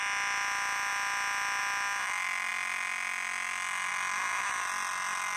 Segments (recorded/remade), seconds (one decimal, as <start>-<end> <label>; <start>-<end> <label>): 0.0-5.4 recorded

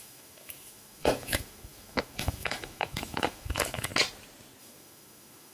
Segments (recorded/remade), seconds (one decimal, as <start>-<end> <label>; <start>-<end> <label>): 0.0-3.9 remade; 3.9-4.6 recorded; 4.6-5.5 remade

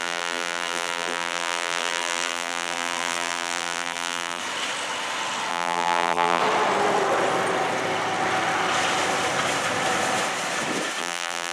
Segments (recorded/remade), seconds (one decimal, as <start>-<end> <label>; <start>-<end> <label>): 0.0-4.4 remade; 4.4-5.5 recorded; 5.5-6.4 remade; 6.4-11.0 recorded; 11.0-11.5 remade

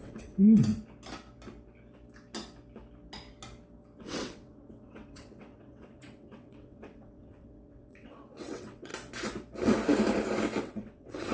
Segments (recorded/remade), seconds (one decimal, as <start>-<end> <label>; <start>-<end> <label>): 0.0-0.7 remade; 0.7-4.0 recorded; 4.0-8.9 remade; 8.9-10.6 recorded; 10.6-11.3 remade

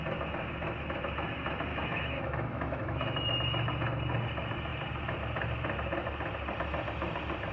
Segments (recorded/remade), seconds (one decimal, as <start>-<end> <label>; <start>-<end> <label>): 0.0-1.7 recorded; 1.7-3.3 remade; 3.3-7.5 recorded

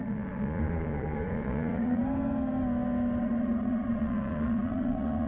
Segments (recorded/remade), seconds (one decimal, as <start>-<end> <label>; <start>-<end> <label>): 0.0-2.0 remade; 2.0-3.2 recorded; 3.2-5.3 remade

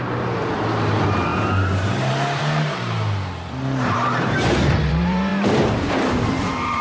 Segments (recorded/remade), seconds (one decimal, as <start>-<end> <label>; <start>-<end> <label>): 0.0-6.8 remade

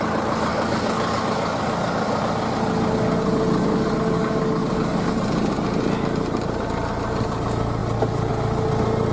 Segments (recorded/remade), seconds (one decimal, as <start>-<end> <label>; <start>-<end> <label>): 0.0-0.5 recorded; 0.5-2.2 remade; 2.2-3.7 recorded; 3.7-5.1 remade; 5.1-9.1 recorded